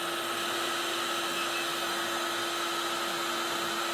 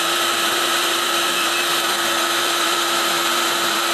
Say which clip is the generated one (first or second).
second